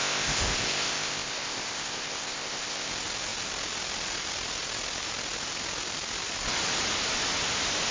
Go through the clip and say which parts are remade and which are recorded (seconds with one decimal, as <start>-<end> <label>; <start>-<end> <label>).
0.0-2.9 remade; 2.9-7.9 recorded